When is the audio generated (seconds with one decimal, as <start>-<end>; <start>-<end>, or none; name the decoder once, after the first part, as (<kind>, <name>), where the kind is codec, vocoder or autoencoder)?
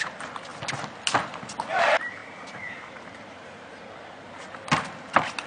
2.2-3.9 (vocoder, BigVGAN v2)